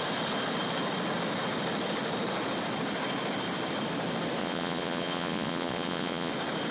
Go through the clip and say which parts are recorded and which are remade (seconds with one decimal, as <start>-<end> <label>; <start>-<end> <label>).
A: 0.0-4.4 recorded; 4.4-6.3 remade; 6.3-6.7 recorded